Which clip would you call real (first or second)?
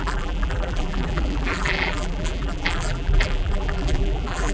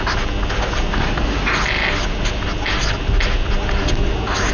second